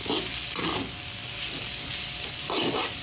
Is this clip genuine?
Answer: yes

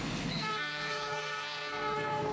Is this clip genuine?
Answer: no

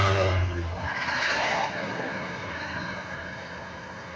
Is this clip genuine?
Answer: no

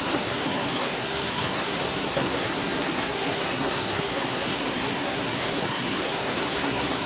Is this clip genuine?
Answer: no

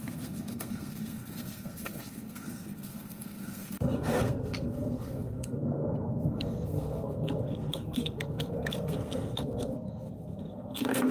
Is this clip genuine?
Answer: no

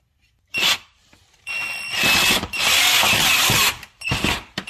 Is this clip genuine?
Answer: yes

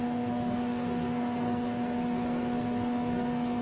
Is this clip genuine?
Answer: no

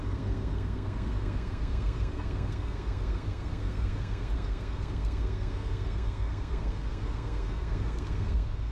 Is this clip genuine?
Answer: no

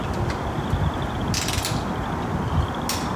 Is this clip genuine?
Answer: yes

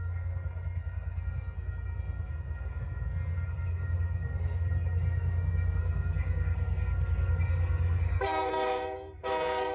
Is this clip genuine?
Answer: no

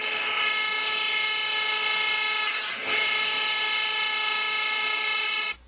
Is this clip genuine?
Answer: yes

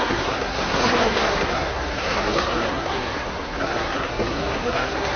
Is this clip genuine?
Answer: no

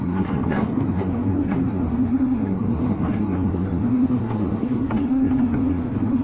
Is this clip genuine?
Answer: no